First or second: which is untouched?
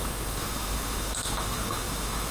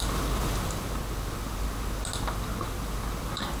second